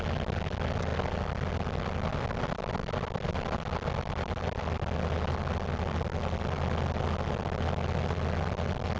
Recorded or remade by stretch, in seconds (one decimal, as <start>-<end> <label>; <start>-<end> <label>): 0.0-9.0 recorded

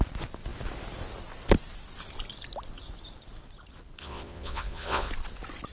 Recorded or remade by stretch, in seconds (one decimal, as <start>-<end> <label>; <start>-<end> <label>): 0.0-4.0 recorded; 4.0-5.1 remade; 5.1-5.7 recorded

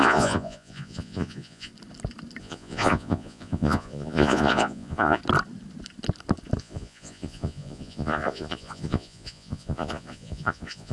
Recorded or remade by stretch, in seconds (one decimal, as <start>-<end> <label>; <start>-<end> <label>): 0.0-1.7 remade; 1.7-2.4 recorded; 2.4-5.2 remade; 5.2-6.6 recorded; 6.6-10.9 remade

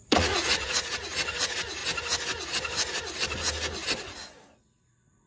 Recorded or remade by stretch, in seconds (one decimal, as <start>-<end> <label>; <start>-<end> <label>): 0.0-1.8 remade; 1.8-5.3 recorded

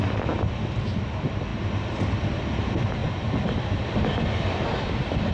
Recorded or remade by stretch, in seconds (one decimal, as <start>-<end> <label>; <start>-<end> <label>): 0.0-5.3 recorded

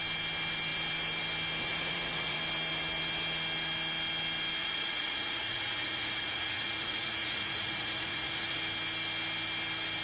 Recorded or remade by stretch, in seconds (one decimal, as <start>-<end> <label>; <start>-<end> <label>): 0.0-1.7 recorded; 1.7-2.4 remade; 2.4-4.6 recorded; 4.6-8.6 remade; 8.6-10.0 recorded